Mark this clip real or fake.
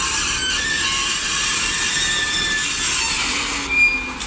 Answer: real